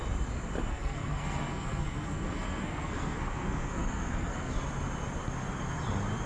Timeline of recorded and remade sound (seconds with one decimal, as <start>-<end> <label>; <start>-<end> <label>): 0.0-0.7 recorded; 0.7-4.5 remade; 4.5-6.3 recorded